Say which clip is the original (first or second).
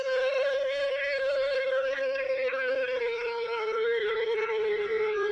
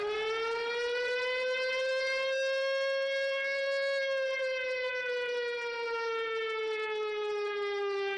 second